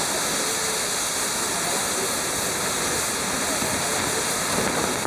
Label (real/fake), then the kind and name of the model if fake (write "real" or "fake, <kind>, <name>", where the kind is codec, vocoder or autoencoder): real